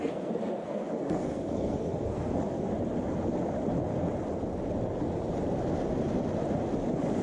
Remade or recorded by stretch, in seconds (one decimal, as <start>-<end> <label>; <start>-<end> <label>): 0.0-2.7 remade; 2.7-7.2 recorded